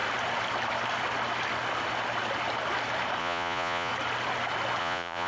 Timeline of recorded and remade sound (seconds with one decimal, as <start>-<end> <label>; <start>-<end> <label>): 0.0-3.2 recorded; 3.2-3.9 remade; 3.9-4.8 recorded; 4.8-5.3 remade